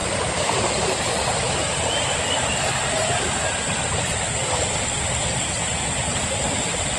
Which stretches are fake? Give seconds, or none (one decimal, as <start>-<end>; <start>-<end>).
0.0-3.5